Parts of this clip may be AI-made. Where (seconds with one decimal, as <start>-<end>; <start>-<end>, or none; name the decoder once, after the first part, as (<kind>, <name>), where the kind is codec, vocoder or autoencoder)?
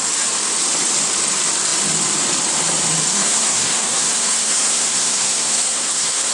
3.1-6.3 (codec, SNAC)